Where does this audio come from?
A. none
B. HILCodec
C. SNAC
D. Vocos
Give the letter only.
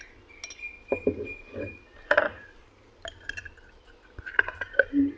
A